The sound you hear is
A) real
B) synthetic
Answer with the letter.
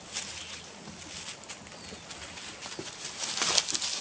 A